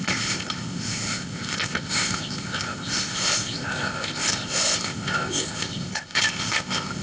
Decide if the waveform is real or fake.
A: fake